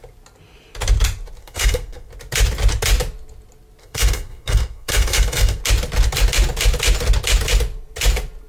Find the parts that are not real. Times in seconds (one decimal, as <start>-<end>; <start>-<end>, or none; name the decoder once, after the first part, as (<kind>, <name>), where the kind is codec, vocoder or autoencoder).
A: 1.4-2.1 (codec, SNAC); 3.8-5.6